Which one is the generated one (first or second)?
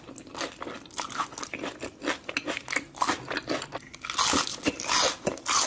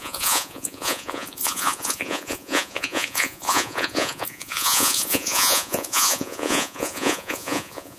second